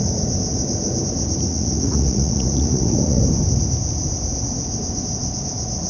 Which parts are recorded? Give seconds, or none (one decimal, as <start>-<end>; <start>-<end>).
0.0-1.5; 3.2-5.9